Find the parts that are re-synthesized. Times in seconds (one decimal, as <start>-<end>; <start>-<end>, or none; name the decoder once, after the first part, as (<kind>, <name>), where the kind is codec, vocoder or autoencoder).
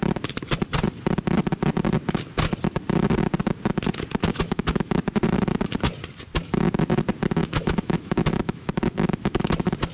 4.2-5.0 (autoencoder, DAC-VAE); 7.4-9.4